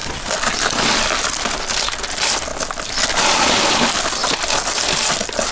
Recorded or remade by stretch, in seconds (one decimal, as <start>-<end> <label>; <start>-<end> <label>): 0.0-5.5 recorded